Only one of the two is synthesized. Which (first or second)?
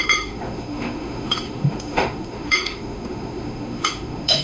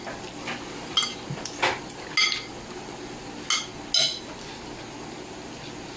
first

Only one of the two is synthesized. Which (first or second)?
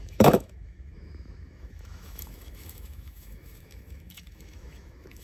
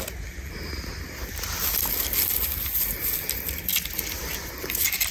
first